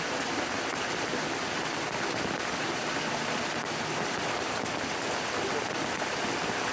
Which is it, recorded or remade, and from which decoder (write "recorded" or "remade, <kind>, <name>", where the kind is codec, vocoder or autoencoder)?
recorded